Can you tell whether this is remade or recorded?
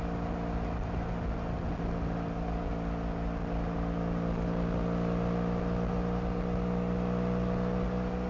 recorded